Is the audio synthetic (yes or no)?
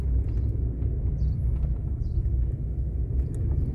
no